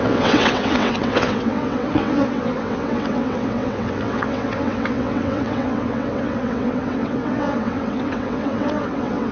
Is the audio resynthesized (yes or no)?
yes